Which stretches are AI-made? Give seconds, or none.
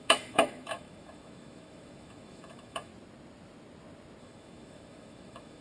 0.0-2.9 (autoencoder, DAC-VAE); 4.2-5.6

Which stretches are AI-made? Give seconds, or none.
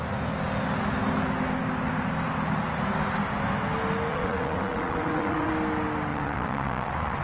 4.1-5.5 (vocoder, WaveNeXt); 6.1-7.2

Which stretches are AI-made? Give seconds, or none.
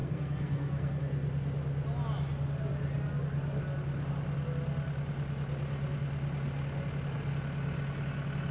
0.0-1.0 (codec, SNAC)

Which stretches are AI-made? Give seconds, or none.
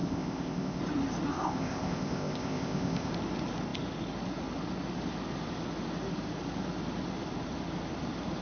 0.0-0.8 (codec, ZipCodec); 1.3-3.1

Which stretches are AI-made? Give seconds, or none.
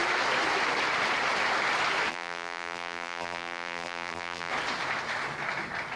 2.1-4.5 (vocoder, BigVGAN v2)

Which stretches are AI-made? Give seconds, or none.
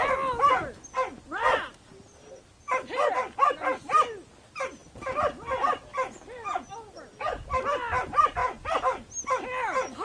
none